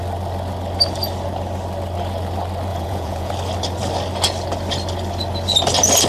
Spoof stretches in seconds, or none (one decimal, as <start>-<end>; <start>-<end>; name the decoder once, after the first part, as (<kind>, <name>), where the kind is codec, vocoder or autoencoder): 2.7-3.3 (vocoder, Vocos)